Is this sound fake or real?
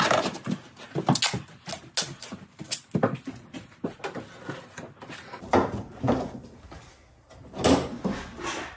real